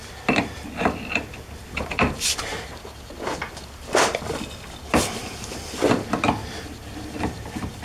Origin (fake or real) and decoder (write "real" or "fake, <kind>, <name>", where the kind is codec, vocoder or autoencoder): real